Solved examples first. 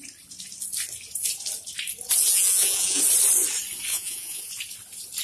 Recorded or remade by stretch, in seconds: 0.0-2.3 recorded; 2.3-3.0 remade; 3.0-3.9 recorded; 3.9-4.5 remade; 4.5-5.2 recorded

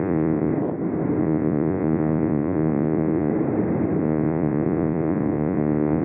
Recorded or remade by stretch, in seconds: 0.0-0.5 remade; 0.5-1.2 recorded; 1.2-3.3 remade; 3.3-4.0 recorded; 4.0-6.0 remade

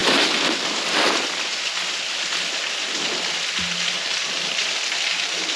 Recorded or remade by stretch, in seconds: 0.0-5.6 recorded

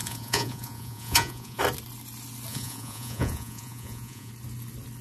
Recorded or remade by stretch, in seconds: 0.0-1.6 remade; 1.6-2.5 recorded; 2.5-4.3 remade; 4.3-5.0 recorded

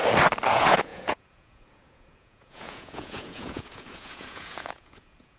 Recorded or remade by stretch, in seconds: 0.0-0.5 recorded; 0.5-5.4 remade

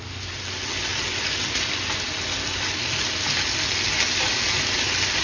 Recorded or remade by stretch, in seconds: 0.0-5.2 recorded

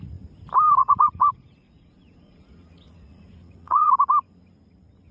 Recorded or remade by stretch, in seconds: 0.0-0.8 recorded; 0.8-3.9 remade; 3.9-5.1 recorded